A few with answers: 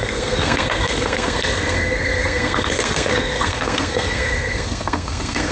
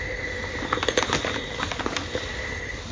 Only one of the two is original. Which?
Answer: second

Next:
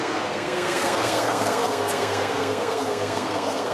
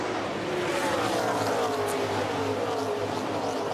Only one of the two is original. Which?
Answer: second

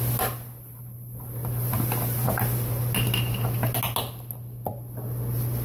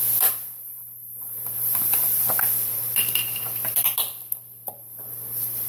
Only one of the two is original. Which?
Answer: first